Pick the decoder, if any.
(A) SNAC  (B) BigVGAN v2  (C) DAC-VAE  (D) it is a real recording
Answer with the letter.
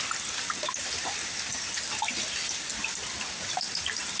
D